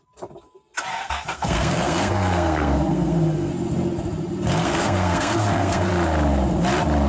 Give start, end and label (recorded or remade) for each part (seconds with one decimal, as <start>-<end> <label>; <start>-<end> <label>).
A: 0.0-0.9 recorded; 0.9-3.5 remade; 3.5-4.6 recorded; 4.6-5.9 remade; 5.9-7.1 recorded